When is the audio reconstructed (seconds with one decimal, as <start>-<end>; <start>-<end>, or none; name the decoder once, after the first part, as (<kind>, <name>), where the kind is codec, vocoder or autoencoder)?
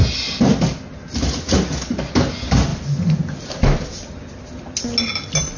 none